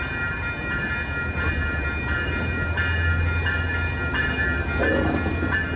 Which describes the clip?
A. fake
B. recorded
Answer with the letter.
B